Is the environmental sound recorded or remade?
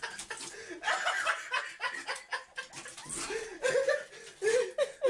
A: recorded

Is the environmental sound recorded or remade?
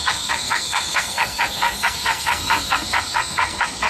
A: remade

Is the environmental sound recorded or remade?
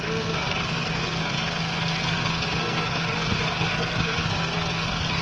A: remade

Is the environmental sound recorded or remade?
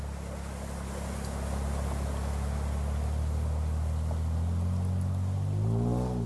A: recorded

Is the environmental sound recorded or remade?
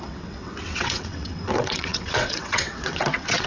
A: remade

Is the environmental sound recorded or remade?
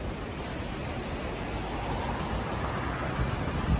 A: recorded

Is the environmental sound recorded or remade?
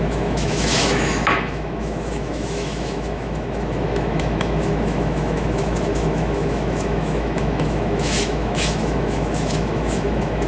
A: remade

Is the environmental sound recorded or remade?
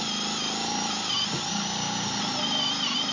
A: recorded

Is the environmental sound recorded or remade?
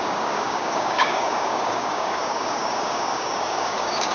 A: remade